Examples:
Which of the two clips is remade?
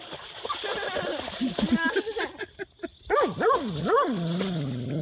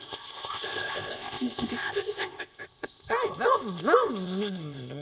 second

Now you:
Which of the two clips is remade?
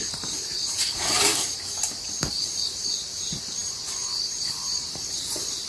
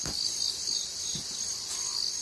first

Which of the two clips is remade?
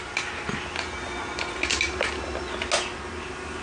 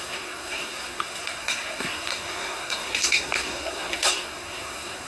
second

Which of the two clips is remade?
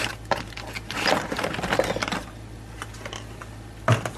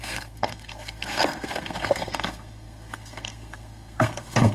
second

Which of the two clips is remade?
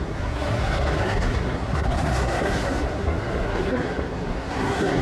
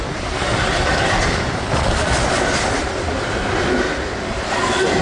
first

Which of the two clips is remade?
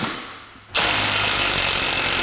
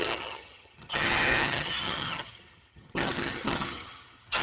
second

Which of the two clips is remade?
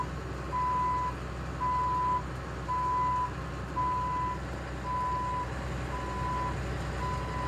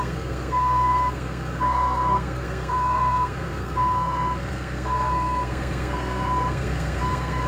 second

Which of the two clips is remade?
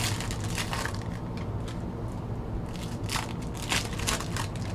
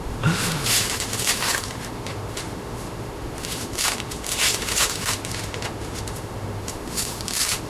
second